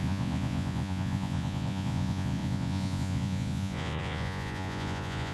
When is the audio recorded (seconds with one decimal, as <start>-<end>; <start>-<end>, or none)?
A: none